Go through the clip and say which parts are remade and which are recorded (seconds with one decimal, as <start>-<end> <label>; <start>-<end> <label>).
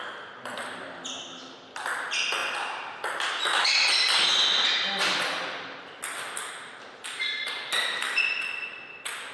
0.0-9.3 recorded